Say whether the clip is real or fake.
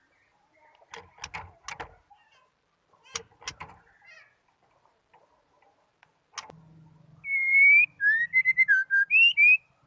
real